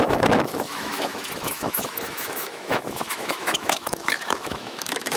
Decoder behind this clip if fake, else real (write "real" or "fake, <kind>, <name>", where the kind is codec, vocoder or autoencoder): fake, autoencoder, DAC-VAE